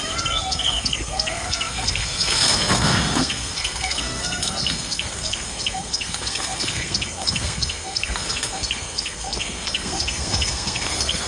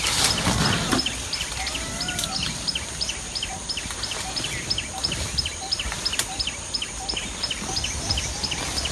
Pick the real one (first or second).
second